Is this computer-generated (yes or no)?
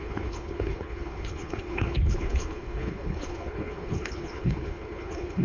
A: yes